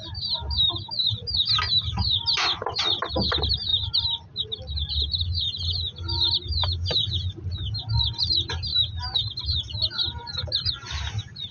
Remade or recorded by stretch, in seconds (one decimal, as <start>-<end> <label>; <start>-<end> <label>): 0.0-11.5 recorded